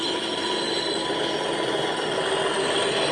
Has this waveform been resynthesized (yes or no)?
no